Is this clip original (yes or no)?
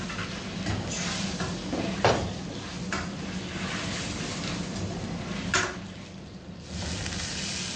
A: yes